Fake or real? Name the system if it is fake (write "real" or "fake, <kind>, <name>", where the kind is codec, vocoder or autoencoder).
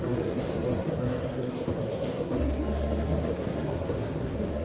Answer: fake, codec, SNAC